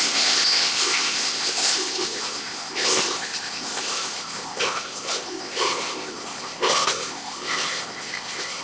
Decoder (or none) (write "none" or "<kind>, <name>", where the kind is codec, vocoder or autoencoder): codec, ZipCodec